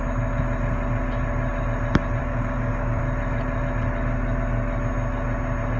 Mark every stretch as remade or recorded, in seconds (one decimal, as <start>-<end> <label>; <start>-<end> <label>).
0.0-2.2 recorded; 2.2-3.0 remade; 3.0-5.8 recorded